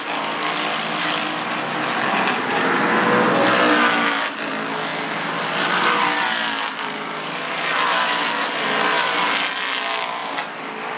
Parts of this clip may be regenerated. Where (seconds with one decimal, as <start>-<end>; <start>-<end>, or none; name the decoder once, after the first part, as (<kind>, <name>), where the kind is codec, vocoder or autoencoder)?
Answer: none